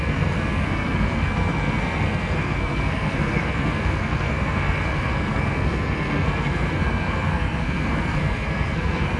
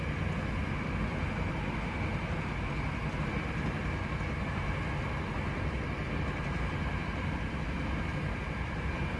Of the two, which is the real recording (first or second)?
second